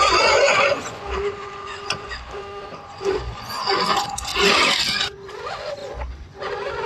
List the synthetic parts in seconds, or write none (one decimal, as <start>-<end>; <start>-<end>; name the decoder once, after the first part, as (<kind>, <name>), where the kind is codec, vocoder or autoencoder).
0.0-4.3 (vocoder, Vocos); 4.9-6.9